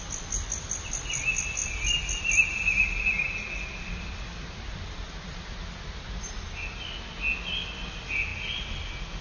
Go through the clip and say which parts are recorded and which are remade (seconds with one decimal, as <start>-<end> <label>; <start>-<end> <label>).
0.0-9.2 recorded